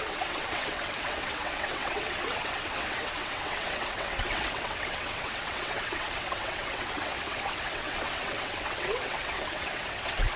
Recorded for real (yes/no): no